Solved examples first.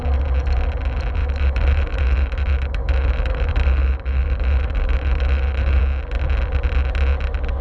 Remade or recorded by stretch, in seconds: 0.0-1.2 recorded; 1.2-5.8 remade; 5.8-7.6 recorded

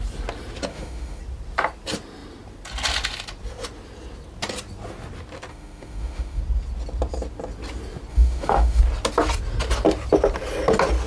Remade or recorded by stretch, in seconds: 0.0-0.7 recorded; 0.7-1.2 remade; 1.2-5.5 recorded; 5.5-6.4 remade; 6.4-8.1 recorded; 8.1-8.8 remade; 8.8-11.1 recorded

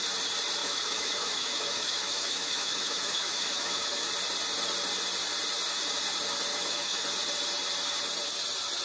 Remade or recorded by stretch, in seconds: 0.0-0.6 recorded; 0.6-4.1 remade; 4.1-6.5 recorded; 6.5-7.0 remade; 7.0-8.8 recorded

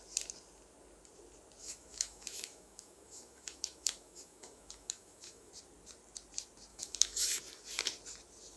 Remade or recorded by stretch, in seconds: 0.0-1.6 recorded; 1.6-5.5 remade; 5.5-6.7 recorded; 6.7-7.4 remade; 7.4-8.6 recorded